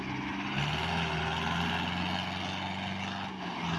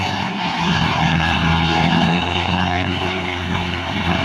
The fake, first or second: second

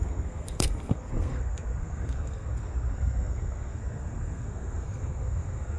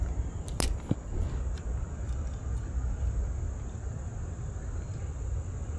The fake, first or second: first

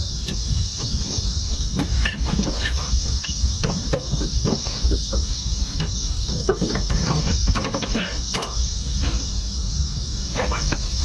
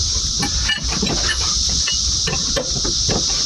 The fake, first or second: first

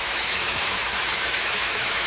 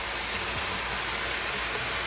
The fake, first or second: first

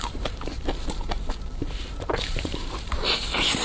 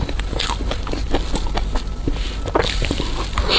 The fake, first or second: first